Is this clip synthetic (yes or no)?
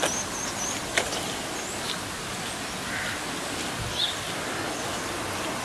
no